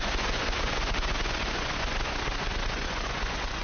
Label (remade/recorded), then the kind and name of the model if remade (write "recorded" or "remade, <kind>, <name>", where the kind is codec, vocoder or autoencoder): remade, vocoder, Vocos